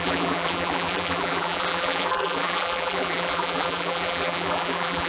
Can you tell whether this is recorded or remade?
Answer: remade